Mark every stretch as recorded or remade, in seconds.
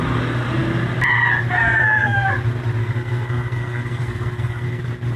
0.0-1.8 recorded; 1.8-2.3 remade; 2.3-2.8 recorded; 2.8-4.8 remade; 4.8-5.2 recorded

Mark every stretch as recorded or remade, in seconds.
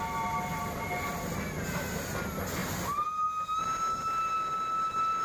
0.0-5.2 recorded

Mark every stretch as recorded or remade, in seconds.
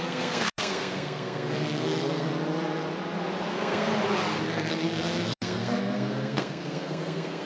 0.0-2.3 remade; 2.3-3.5 recorded; 3.5-3.9 remade; 3.9-4.7 recorded; 4.7-7.5 remade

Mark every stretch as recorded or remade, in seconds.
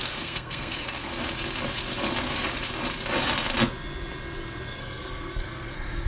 0.0-1.1 remade; 1.1-4.8 recorded; 4.8-6.1 remade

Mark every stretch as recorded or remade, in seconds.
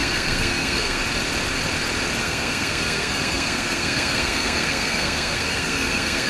0.0-1.0 remade; 1.0-2.2 recorded; 2.2-6.3 remade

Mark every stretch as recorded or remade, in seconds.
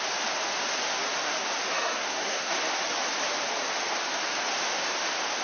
0.0-1.7 recorded; 1.7-2.6 remade; 2.6-5.4 recorded